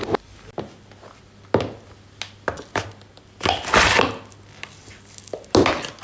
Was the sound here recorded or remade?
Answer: recorded